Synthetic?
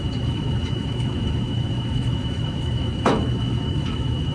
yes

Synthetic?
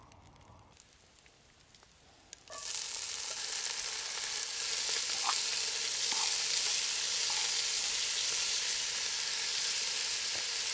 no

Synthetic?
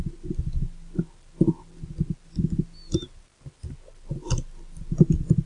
no